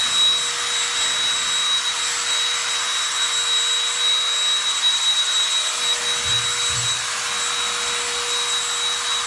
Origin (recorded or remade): recorded